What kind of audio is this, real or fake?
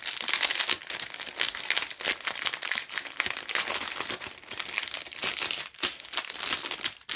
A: real